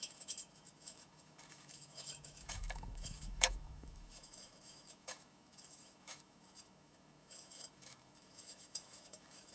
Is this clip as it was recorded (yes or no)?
no